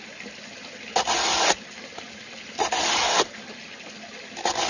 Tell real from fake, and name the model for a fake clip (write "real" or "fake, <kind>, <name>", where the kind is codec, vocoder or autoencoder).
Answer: real